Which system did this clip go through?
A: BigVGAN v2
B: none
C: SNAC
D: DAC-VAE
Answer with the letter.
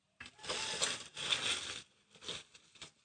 B